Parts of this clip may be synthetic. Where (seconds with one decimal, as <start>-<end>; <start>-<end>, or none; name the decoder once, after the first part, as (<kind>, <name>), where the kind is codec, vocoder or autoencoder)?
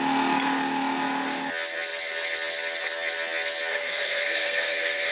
3.7-5.1 (codec, SNAC)